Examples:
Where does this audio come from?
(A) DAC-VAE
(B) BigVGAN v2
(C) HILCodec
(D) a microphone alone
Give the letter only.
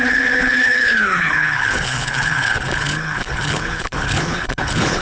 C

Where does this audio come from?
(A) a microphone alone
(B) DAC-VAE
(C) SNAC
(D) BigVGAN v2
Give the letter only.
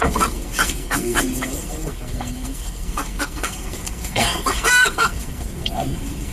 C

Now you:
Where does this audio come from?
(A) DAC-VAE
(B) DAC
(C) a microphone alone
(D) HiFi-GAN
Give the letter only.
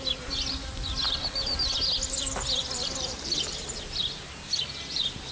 C